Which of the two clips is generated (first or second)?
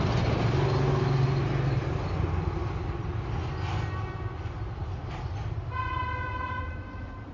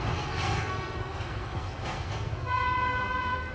second